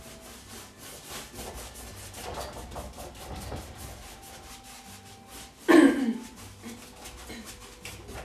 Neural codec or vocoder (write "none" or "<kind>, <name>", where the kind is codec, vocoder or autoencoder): none